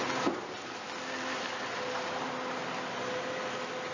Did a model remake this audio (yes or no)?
no